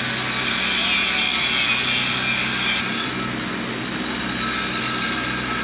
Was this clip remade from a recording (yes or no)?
no